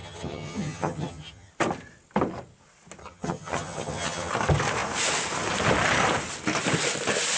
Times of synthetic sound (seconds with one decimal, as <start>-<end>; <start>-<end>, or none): 0.0-1.5; 3.0-4.3